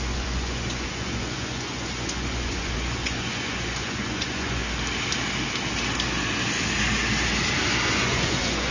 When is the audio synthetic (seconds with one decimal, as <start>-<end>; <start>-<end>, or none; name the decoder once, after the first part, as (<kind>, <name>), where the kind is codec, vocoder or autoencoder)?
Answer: 0.0-4.6 (vocoder, Vocos); 7.7-8.7